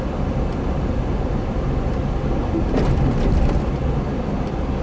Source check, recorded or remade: recorded